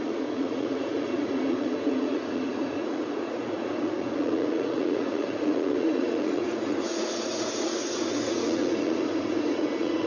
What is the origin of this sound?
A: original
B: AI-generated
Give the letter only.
B